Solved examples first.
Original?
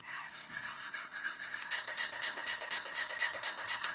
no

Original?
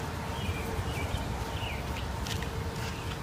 yes